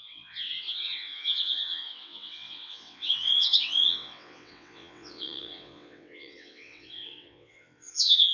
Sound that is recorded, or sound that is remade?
remade